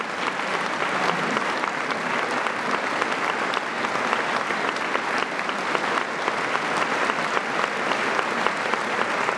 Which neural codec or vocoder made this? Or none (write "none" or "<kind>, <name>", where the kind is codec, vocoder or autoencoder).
none